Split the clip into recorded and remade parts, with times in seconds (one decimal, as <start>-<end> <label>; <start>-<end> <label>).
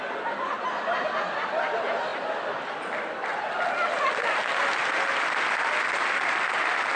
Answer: 0.0-7.0 recorded